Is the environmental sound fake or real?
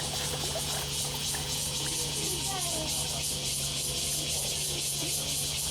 fake